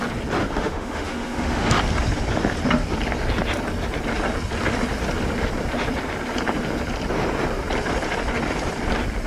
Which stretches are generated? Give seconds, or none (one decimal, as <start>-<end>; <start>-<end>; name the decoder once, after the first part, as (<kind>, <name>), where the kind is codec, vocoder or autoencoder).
0.4-1.7 (autoencoder, DAC-VAE)